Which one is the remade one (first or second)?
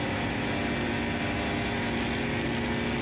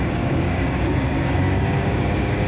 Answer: second